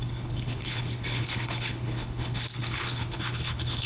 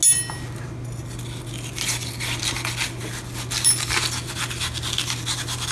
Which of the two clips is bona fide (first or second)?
second